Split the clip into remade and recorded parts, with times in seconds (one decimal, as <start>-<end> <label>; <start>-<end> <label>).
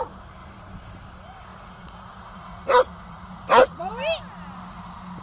0.0-1.5 recorded; 1.5-3.9 remade; 3.9-5.2 recorded